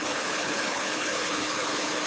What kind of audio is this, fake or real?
fake